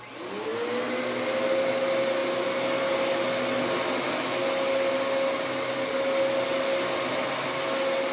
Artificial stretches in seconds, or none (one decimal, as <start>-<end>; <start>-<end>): none